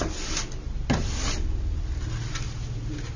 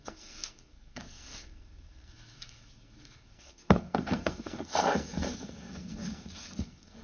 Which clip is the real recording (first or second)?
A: first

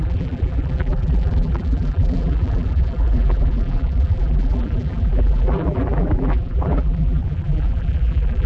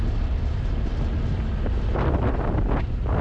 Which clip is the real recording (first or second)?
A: second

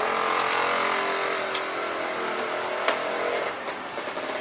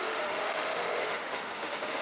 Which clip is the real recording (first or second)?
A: first